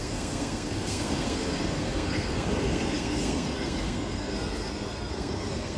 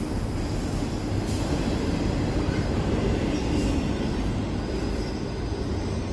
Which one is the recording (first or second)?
second